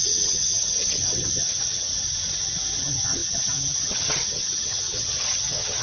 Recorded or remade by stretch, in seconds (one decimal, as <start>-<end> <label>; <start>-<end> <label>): 0.0-1.9 remade; 1.9-2.8 recorded; 2.8-5.8 remade